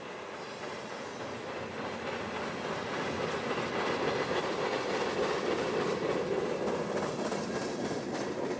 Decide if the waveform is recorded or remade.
recorded